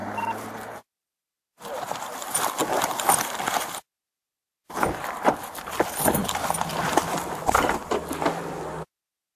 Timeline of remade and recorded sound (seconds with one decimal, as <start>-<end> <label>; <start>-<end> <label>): 0.0-1.3 remade; 1.3-9.4 recorded